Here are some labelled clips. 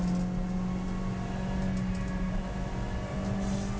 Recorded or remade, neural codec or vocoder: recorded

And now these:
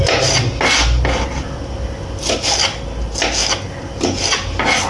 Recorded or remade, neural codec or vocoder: recorded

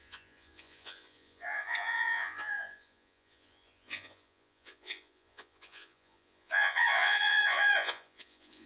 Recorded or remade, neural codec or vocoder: remade, vocoder, Vocos